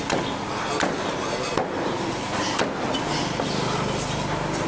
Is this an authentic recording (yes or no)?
yes